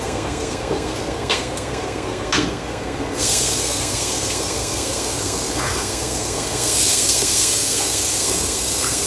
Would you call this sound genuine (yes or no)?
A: no